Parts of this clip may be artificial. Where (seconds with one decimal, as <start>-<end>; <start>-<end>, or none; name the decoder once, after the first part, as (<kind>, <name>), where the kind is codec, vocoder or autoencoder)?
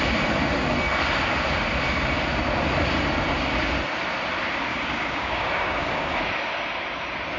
4.7-6.2 (codec, DAC)